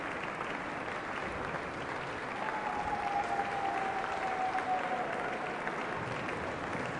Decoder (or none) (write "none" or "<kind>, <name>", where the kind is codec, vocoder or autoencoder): none